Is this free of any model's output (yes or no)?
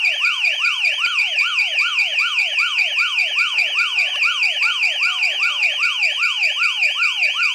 yes